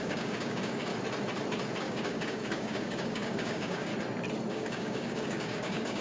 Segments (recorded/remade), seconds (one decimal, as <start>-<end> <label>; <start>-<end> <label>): 0.0-0.9 remade; 0.9-1.8 recorded; 1.8-3.9 remade; 3.9-4.5 recorded; 4.5-6.0 remade